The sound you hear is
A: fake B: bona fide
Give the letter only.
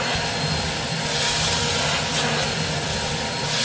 B